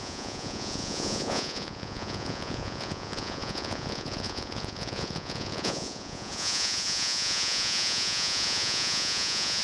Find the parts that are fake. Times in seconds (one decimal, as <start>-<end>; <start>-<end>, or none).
0.0-9.6